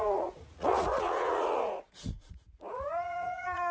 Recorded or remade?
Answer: remade